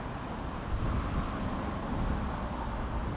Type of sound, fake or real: real